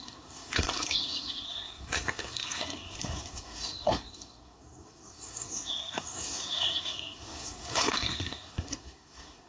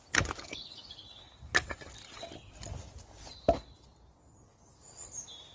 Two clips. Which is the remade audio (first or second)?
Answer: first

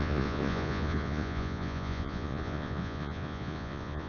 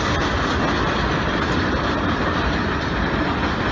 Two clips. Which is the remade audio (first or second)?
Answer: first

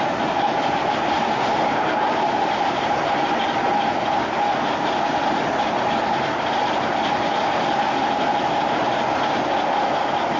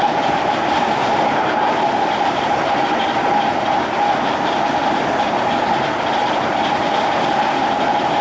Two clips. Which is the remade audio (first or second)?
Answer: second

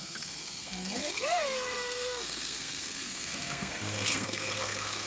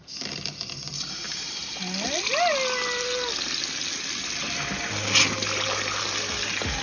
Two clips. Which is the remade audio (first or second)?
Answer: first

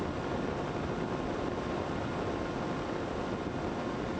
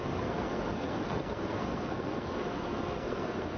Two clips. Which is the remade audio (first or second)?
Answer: second